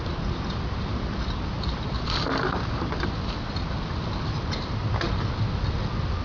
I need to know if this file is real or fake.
real